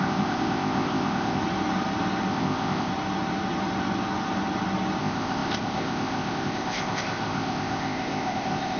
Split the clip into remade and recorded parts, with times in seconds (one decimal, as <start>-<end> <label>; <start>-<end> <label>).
0.0-1.4 remade; 1.4-2.3 recorded; 2.3-2.9 remade; 2.9-5.0 recorded; 5.0-8.8 remade